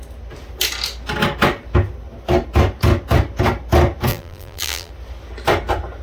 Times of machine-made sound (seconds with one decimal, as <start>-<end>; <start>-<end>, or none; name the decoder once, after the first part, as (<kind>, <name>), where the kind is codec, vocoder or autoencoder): 4.1-4.9 (vocoder, BigVGAN v2)